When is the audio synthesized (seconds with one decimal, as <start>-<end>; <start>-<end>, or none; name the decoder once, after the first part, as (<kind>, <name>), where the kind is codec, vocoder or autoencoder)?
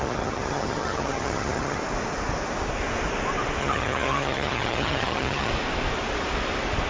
0.0-1.8 (vocoder, HiFi-GAN); 3.6-5.5